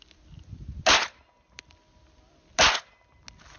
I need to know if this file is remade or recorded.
recorded